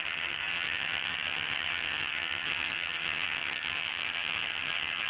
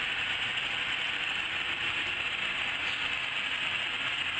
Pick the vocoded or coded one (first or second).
first